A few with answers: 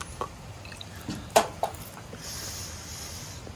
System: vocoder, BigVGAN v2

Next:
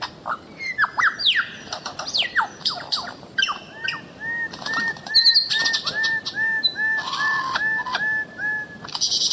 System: none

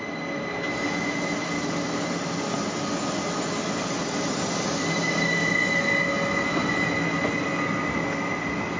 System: none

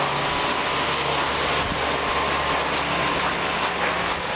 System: none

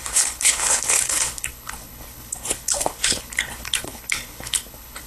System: codec, HILCodec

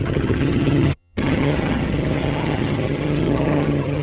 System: vocoder, HiFi-GAN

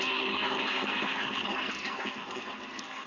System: codec, SNAC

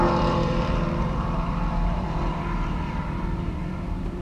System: vocoder, BigVGAN v2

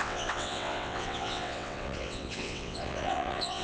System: vocoder, WaveNeXt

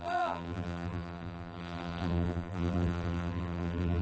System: vocoder, BigVGAN v2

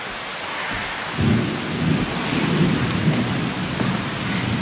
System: none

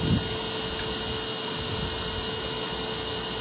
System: none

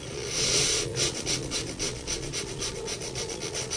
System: vocoder, Vocos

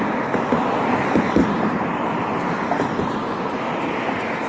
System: none